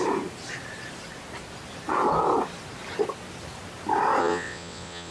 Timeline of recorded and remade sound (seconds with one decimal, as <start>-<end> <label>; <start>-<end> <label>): 0.0-4.2 recorded; 4.2-5.1 remade